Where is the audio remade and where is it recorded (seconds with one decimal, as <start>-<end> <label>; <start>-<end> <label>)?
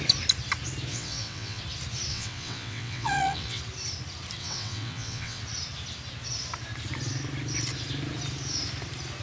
0.0-0.9 recorded; 0.9-1.6 remade; 1.6-2.1 recorded; 2.1-3.6 remade; 3.6-4.4 recorded; 4.4-5.4 remade; 5.4-9.2 recorded